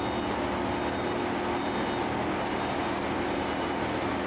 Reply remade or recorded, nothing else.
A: recorded